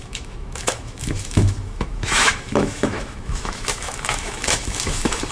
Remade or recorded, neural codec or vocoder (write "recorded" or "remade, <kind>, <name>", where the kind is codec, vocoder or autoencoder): remade, autoencoder, DAC-VAE